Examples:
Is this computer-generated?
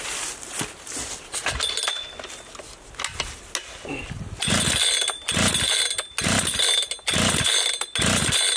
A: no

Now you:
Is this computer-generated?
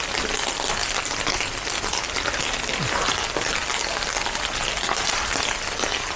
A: no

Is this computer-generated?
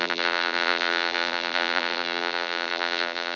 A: yes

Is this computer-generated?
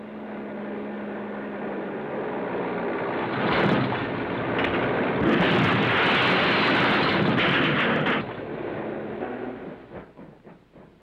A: no